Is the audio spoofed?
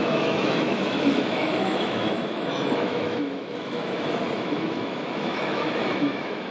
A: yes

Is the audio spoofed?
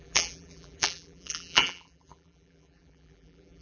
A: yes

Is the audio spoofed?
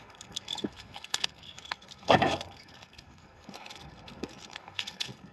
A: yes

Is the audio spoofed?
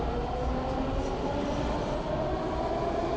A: no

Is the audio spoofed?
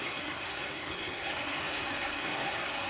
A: yes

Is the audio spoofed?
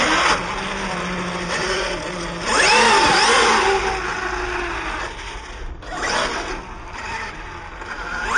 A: no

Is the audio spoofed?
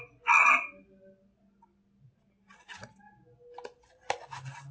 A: no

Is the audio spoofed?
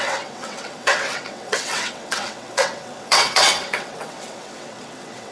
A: yes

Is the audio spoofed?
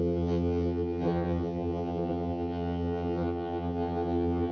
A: yes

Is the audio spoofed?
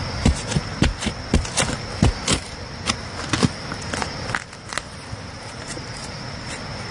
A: no